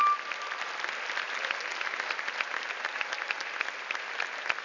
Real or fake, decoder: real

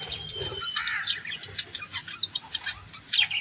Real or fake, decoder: real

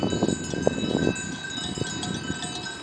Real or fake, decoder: real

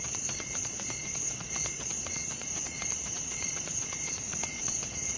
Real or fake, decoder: fake, vocoder, Vocos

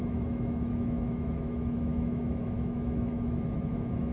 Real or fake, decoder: fake, autoencoder, DAC-VAE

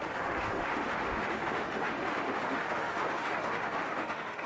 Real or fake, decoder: fake, autoencoder, DAC-VAE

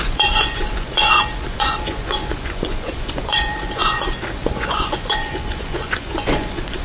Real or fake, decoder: fake, vocoder, Vocos